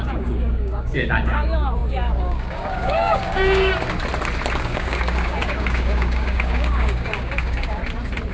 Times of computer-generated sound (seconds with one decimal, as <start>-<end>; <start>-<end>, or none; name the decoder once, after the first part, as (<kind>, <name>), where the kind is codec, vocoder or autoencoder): 0.0-3.7 (codec, DAC); 4.6-7.8